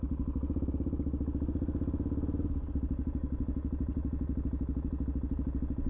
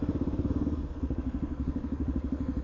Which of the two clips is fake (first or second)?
second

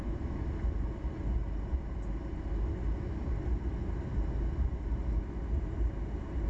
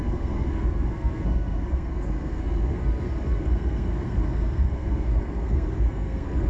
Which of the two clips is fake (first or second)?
second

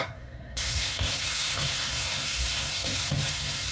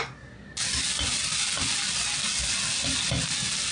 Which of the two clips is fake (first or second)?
first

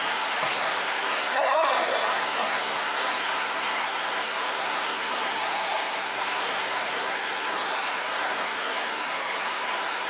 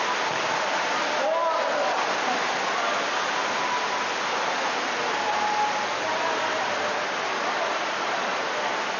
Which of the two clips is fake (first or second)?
first